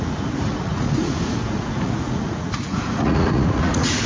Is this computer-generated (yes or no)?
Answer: yes